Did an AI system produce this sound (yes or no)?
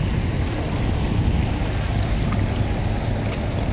no